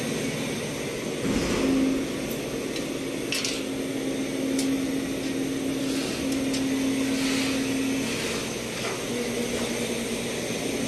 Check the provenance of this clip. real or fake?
real